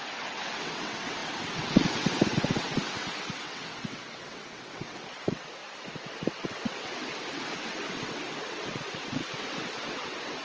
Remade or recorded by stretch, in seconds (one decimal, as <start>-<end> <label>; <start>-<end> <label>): 0.0-5.6 remade; 5.6-6.3 recorded; 6.3-10.4 remade